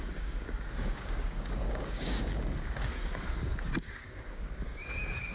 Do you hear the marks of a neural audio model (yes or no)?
yes